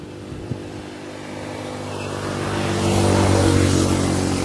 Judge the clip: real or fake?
real